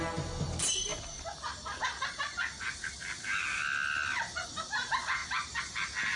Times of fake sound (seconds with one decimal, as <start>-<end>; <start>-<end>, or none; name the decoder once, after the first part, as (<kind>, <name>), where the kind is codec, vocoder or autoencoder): none